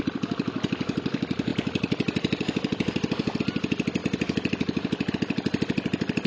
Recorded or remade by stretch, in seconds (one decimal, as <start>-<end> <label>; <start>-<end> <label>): 0.0-6.3 recorded